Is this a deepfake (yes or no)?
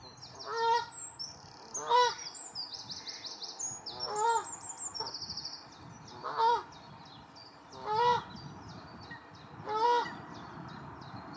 no